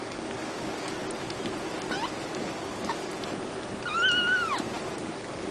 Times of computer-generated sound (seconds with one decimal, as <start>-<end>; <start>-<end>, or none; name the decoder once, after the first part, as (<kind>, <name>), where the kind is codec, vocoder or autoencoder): 0.0-1.0 (codec, DAC); 2.4-3.1; 5.1-5.5

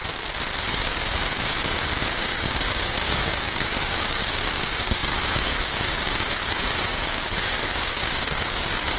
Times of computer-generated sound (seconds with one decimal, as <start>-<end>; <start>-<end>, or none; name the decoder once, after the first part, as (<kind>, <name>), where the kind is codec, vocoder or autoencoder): 0.7-9.0 (codec, DAC)